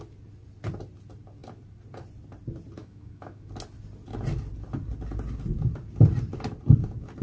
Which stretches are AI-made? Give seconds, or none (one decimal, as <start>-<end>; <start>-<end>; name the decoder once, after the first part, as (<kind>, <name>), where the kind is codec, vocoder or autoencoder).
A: 2.8-3.5 (autoencoder, DAC-VAE)